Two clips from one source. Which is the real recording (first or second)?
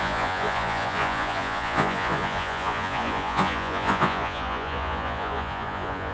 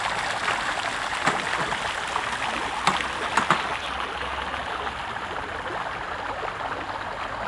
second